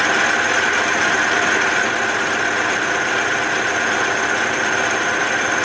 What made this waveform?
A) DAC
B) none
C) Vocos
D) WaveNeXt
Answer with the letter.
B